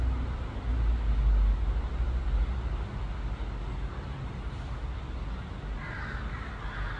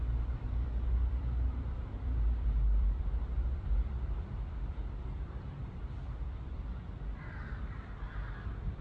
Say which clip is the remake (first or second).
second